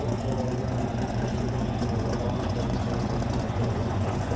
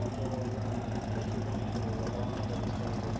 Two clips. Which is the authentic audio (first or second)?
second